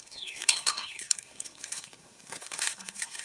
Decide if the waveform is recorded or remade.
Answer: remade